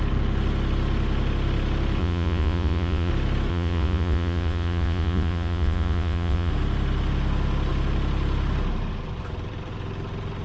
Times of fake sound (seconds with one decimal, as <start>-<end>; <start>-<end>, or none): 2.0-3.1; 3.5-6.5